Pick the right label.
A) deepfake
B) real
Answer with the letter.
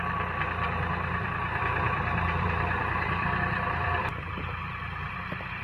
A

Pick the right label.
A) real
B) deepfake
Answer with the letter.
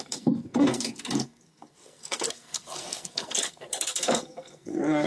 B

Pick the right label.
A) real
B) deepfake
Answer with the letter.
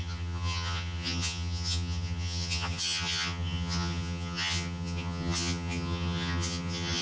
B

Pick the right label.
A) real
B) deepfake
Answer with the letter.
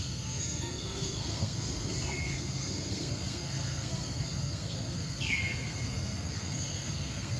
B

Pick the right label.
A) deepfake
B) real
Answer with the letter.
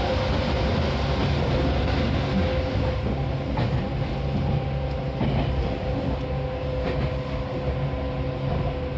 B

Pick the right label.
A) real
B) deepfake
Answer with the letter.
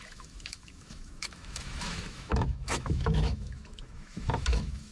B